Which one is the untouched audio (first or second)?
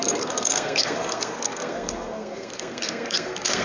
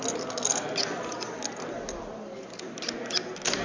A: second